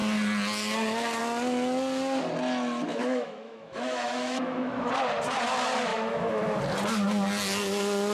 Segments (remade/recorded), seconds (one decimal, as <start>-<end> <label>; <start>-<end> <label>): 0.0-2.9 recorded; 2.9-4.9 remade; 4.9-5.9 recorded; 5.9-6.6 remade; 6.6-8.1 recorded